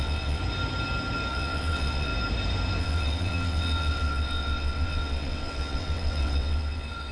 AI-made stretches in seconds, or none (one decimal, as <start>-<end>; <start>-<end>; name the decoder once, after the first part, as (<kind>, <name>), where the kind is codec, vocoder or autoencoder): 0.0-0.4 (vocoder, WaveNeXt); 1.3-2.1; 2.8-7.1